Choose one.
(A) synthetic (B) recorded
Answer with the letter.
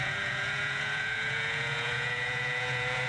A